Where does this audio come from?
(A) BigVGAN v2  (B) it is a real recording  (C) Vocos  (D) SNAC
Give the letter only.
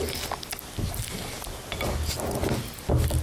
B